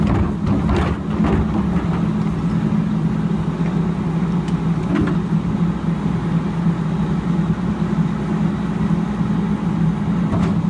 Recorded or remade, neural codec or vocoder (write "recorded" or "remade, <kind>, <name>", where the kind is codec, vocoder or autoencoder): recorded